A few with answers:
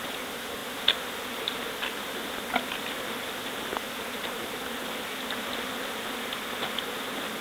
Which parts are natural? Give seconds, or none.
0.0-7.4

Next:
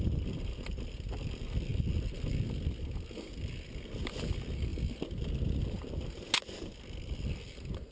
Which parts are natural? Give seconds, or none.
0.0-7.9

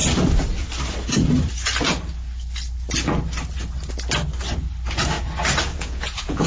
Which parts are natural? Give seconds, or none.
0.0-5.7

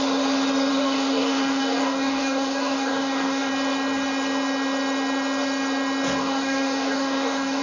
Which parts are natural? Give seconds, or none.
0.0-0.7; 3.5-6.2

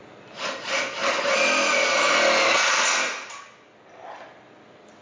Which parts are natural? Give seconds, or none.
0.0-5.0

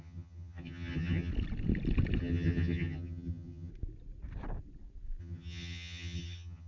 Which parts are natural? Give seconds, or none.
1.3-2.2; 3.7-5.2